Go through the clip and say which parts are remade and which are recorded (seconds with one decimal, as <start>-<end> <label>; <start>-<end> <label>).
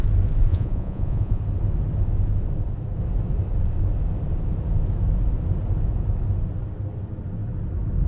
0.0-0.5 recorded; 0.5-1.4 remade; 1.4-8.1 recorded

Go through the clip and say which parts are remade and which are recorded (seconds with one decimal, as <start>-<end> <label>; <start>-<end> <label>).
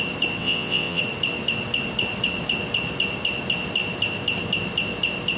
0.0-0.4 recorded; 0.4-1.0 remade; 1.0-5.4 recorded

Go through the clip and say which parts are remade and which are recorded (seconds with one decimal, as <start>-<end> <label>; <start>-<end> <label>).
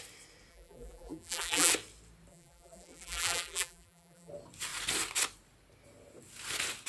0.0-0.5 recorded; 0.5-1.7 remade; 1.7-2.3 recorded; 2.3-4.3 remade; 4.3-6.9 recorded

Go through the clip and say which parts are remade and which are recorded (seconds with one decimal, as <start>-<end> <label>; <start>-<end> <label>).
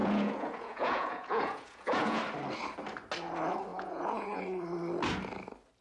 0.0-2.2 remade; 2.2-3.7 recorded; 3.7-4.4 remade; 4.4-5.8 recorded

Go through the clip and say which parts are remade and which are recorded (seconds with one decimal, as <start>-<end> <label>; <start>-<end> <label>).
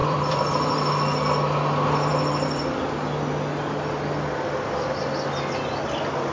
0.0-0.9 remade; 0.9-2.1 recorded; 2.1-2.8 remade; 2.8-6.3 recorded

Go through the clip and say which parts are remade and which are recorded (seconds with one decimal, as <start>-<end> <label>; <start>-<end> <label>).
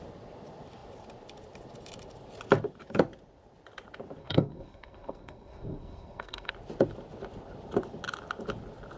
0.0-4.2 recorded; 4.2-6.5 remade; 6.5-9.0 recorded